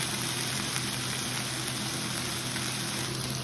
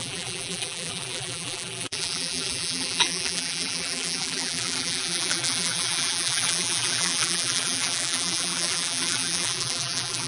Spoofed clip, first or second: second